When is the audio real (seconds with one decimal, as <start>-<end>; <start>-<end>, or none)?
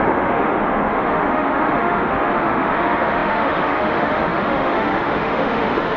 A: none